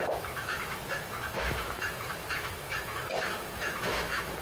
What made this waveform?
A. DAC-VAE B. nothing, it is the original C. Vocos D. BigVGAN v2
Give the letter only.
A